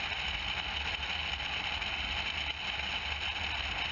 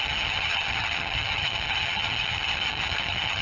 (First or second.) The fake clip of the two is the second